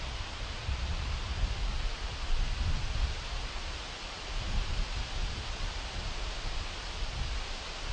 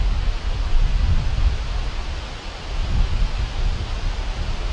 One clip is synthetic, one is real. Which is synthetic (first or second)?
first